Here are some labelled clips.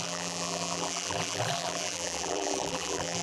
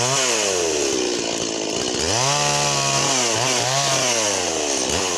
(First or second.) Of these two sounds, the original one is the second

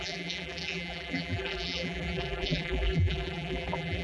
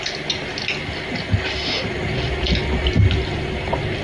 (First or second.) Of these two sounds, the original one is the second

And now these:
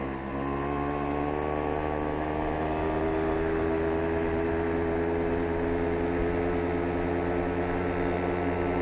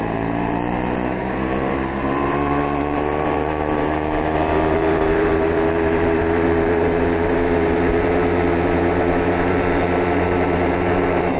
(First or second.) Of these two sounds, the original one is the first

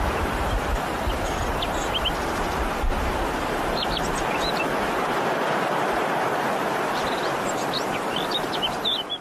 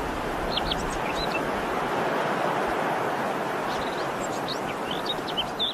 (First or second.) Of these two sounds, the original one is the second